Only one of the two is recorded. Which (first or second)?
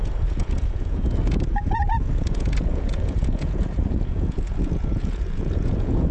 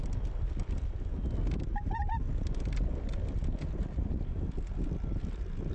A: second